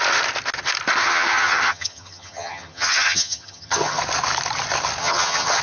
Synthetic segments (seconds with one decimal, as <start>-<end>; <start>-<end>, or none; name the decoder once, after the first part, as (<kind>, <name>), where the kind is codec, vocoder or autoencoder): 1.0-4.0 (vocoder, HiFi-GAN); 5.0-5.6